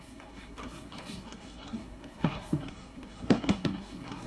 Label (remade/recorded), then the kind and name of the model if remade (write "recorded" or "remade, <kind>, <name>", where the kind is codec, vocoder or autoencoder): remade, codec, SNAC